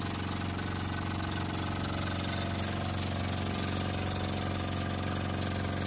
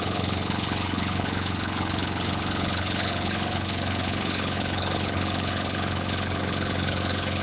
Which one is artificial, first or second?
second